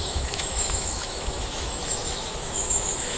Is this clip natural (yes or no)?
no